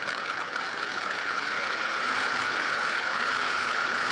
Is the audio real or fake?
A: fake